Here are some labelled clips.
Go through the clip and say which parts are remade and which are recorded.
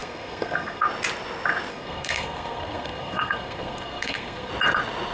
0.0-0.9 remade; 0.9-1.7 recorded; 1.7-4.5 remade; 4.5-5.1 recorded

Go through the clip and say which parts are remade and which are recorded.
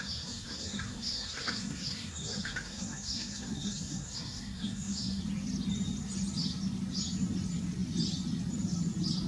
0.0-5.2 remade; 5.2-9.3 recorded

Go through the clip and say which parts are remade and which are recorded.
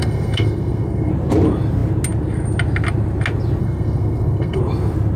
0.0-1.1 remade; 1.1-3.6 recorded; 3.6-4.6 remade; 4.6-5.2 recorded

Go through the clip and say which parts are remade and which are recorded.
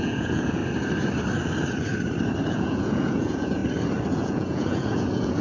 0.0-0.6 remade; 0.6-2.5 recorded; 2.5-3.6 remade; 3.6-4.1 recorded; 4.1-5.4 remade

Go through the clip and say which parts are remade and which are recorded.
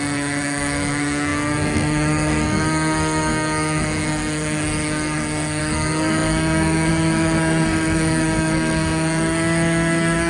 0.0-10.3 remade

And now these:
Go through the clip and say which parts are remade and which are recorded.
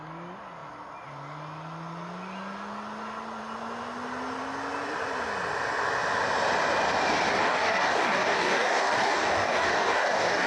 0.0-7.4 recorded; 7.4-10.5 remade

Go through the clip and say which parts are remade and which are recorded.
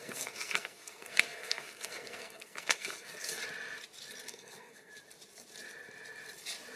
0.0-3.4 remade; 3.4-4.3 recorded; 4.3-4.9 remade; 4.9-6.8 recorded